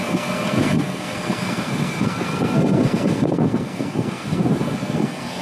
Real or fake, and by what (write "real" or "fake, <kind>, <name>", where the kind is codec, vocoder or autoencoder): fake, codec, SNAC